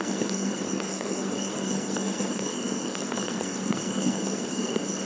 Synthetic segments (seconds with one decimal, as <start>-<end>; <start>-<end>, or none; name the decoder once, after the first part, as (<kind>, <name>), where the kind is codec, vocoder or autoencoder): 0.0-5.0 (codec, SNAC)